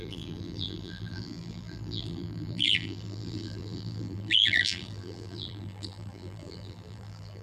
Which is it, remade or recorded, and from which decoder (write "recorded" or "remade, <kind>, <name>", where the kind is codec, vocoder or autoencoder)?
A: remade, vocoder, BigVGAN v2